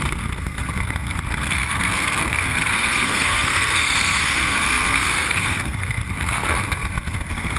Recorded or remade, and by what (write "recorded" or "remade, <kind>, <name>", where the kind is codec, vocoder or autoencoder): remade, codec, SNAC